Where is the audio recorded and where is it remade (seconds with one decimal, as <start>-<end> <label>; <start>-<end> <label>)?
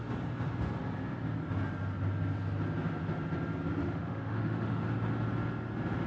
0.0-3.8 recorded; 3.8-4.8 remade; 4.8-6.1 recorded